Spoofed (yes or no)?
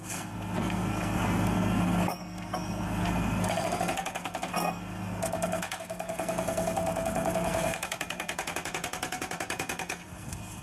yes